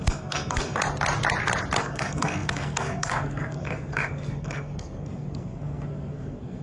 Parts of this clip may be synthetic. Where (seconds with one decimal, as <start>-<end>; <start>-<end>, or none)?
0.0-0.8; 1.8-6.6